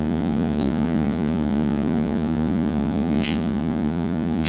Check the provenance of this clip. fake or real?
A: fake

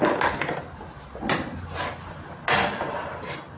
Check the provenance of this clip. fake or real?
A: real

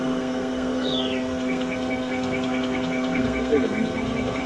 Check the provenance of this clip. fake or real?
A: fake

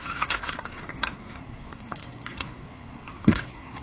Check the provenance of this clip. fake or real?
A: fake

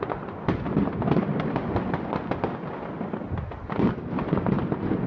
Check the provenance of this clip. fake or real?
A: real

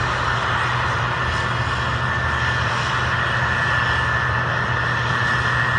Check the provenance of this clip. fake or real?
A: real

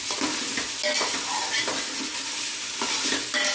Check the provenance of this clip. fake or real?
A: real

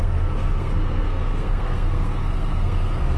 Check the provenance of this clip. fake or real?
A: fake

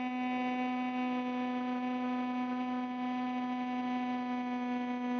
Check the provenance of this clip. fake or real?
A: real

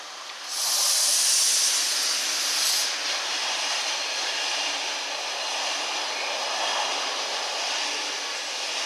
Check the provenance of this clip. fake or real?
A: real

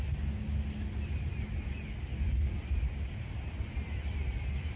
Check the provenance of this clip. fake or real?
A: real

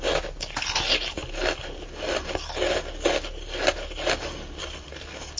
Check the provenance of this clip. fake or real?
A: real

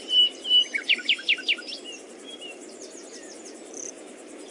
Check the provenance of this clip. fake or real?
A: fake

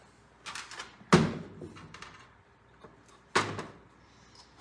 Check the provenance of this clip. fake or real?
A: real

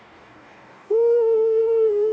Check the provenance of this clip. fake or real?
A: fake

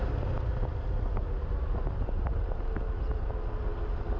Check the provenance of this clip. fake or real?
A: real